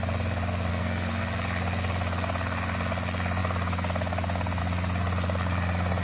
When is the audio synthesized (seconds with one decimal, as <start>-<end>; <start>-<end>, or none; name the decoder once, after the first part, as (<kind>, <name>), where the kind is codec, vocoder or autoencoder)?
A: 0.7-1.2 (codec, SNAC)